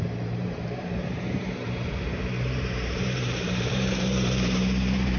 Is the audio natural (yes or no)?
no